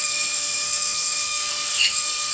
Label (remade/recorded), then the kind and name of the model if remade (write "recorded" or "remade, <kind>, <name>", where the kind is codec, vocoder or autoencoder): remade, codec, SNAC